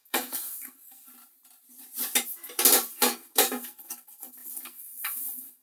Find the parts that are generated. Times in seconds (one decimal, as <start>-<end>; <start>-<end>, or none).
0.0-1.1; 2.9-5.6